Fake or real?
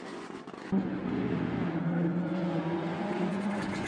fake